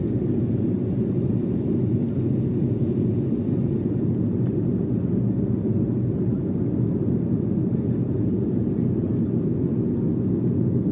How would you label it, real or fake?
real